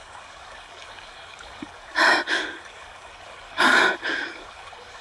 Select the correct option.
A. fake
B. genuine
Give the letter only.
A